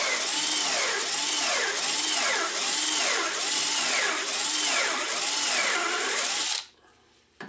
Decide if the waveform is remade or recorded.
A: recorded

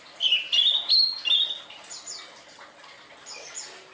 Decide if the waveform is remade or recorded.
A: recorded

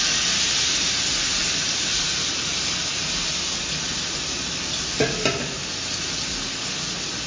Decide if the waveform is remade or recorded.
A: recorded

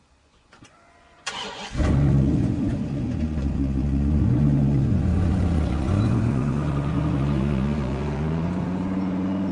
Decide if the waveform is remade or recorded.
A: remade